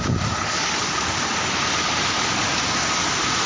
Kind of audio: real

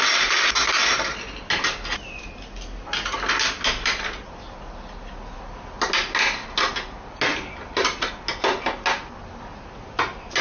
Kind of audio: real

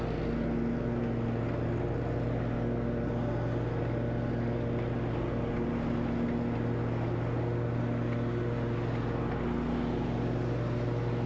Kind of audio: real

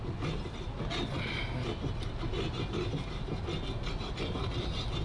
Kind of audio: real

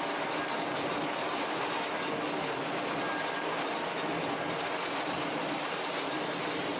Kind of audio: real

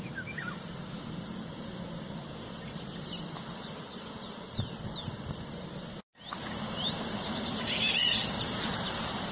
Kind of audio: fake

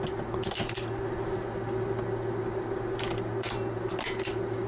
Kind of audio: real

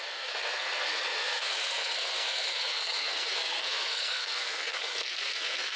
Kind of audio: fake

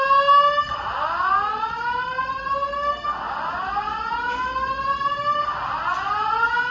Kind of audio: real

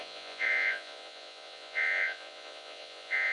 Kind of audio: fake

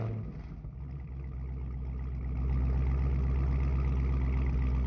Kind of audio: real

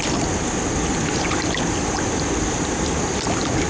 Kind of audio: real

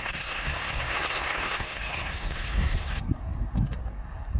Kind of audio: fake